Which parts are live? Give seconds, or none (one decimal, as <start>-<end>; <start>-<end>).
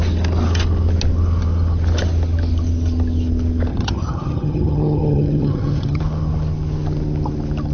0.0-3.7; 6.0-7.7